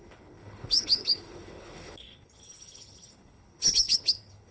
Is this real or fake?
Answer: fake